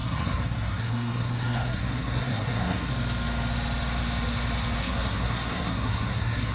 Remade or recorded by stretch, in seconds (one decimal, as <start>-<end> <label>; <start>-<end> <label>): 0.0-2.9 remade; 2.9-4.8 recorded; 4.8-6.5 remade